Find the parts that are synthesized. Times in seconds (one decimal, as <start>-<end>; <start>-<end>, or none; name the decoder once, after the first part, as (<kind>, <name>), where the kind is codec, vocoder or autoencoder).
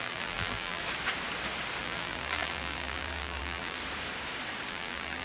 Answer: 0.0-0.8 (vocoder, BigVGAN v2); 1.8-3.8; 4.7-5.2